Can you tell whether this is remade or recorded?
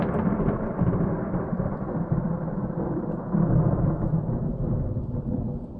remade